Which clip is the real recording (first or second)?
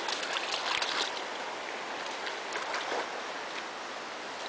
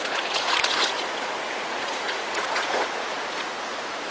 first